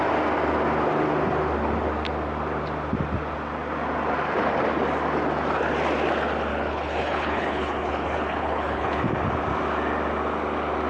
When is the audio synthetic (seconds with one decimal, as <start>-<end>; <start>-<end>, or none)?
6.5-9.0